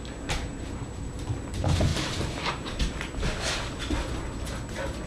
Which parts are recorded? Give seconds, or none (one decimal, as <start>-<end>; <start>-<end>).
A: 0.0-0.5; 1.2-5.1